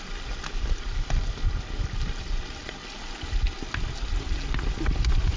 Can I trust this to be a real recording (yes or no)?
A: yes